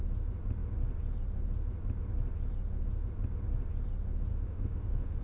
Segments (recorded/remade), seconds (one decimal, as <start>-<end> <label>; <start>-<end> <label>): 0.0-4.3 recorded; 4.3-5.2 remade